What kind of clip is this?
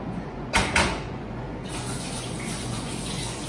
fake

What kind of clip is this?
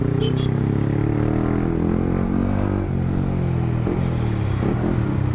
real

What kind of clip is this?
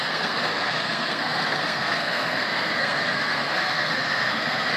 fake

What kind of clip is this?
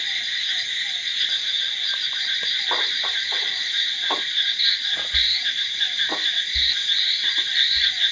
fake